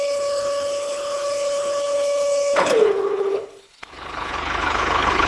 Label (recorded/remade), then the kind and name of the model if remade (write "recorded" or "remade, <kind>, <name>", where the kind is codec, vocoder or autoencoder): remade, codec, HILCodec